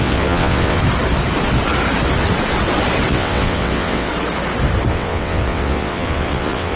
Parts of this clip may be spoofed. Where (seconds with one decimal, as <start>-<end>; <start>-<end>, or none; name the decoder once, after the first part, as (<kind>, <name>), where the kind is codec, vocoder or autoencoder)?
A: 0.0-0.8 (vocoder, WaveNeXt); 3.1-4.1; 4.9-6.8